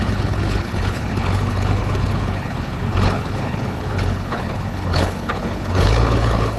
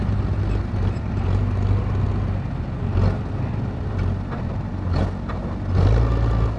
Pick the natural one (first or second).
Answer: second